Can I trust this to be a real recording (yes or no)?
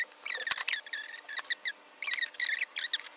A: yes